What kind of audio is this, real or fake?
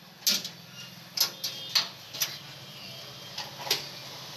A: real